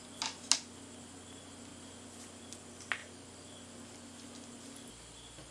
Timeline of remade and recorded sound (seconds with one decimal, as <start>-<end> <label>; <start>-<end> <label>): 0.0-5.5 recorded